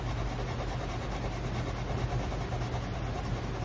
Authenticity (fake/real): real